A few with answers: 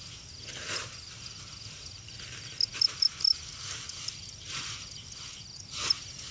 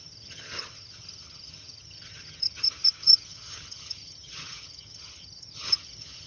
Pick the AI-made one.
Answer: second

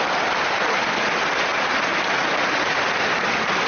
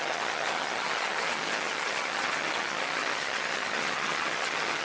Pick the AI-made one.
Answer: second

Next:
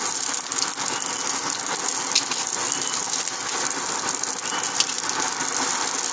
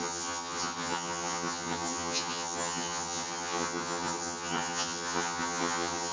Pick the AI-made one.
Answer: second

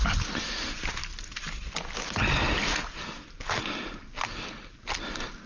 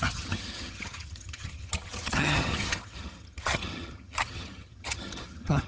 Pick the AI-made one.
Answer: second